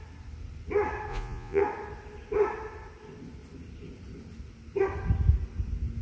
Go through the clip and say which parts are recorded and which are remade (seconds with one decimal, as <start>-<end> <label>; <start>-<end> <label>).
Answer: 0.0-1.1 recorded; 1.1-1.6 remade; 1.6-6.0 recorded